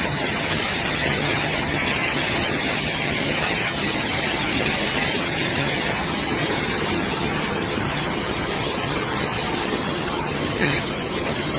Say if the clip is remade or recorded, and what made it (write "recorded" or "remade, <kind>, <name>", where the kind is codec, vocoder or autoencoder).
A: remade, vocoder, HiFi-GAN